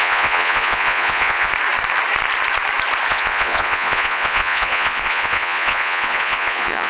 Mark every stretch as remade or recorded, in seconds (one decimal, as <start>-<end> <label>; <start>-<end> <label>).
0.0-1.5 remade; 1.5-3.1 recorded; 3.1-6.9 remade